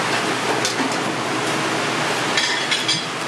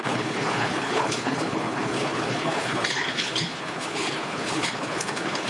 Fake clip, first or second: second